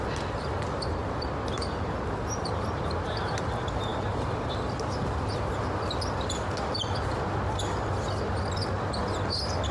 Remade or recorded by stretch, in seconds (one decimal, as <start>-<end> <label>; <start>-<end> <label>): 0.0-9.7 recorded